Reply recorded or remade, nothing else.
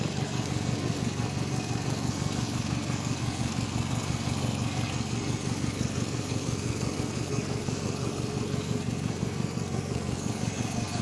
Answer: remade